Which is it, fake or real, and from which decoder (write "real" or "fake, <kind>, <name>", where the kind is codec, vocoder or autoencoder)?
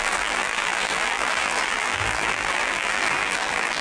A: fake, vocoder, BigVGAN v2